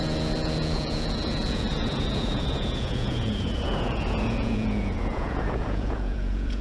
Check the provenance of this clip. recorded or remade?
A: remade